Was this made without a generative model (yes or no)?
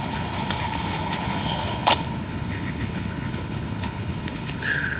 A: no